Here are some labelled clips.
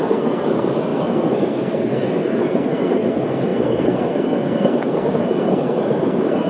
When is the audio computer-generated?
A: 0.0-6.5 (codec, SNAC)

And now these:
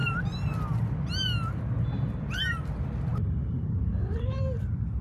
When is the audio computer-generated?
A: 3.5-4.2 (vocoder, BigVGAN v2)